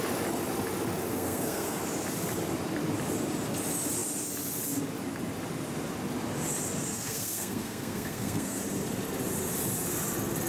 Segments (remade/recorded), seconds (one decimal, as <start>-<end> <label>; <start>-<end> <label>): 0.0-1.1 recorded; 1.1-1.8 remade; 1.8-6.9 recorded; 6.9-8.6 remade; 8.6-10.5 recorded